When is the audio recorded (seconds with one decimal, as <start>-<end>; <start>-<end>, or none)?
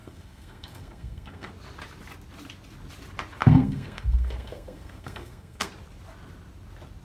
1.5-3.4; 5.7-7.0